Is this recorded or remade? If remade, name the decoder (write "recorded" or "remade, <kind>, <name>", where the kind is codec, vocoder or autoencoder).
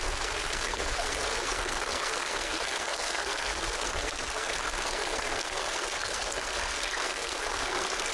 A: remade, codec, SNAC